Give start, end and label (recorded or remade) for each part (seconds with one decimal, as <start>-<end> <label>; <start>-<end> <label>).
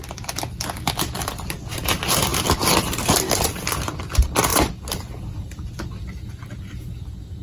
0.0-7.4 recorded